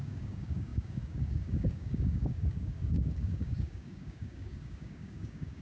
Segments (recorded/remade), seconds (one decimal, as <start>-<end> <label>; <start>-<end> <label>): 0.0-5.6 remade